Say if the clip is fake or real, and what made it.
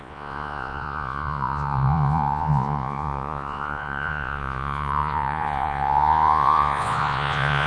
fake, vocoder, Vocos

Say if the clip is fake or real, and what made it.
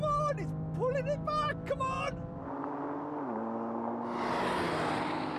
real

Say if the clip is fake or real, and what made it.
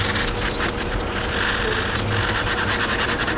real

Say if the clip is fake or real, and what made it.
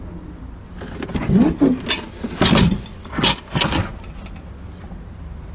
real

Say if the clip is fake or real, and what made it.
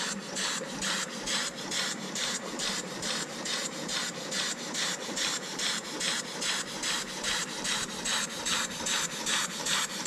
fake, vocoder, BigVGAN v2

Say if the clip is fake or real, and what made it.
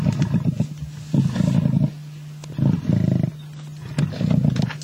real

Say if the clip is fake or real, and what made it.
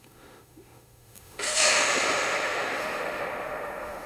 fake, autoencoder, DAC-VAE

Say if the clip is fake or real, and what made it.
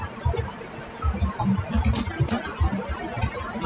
real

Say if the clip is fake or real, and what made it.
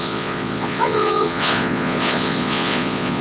fake, vocoder, Vocos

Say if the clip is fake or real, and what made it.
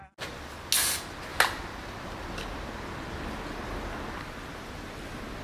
real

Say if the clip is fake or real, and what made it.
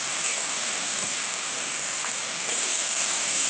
fake, codec, DAC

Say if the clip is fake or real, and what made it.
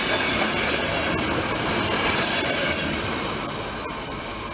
real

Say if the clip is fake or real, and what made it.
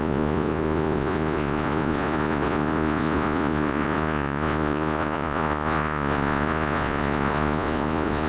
fake, vocoder, Vocos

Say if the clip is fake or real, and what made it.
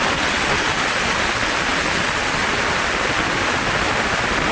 real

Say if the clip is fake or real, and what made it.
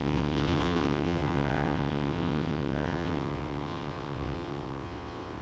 fake, vocoder, WaveNeXt